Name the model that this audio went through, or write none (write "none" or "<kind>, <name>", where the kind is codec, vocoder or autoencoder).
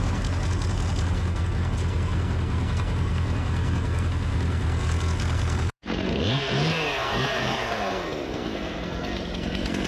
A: codec, SNAC